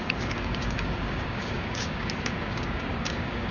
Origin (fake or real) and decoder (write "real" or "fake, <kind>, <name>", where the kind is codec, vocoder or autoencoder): fake, codec, DAC